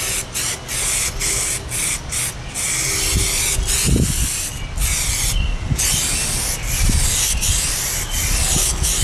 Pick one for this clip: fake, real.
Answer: real